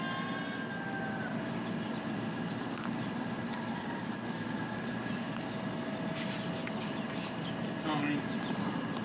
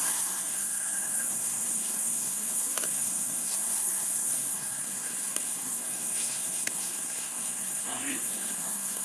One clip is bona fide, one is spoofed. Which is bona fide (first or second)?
first